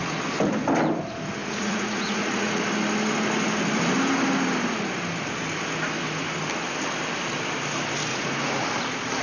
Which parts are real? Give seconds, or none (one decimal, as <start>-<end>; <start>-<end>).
0.0-1.4; 2.6-8.1; 8.6-9.2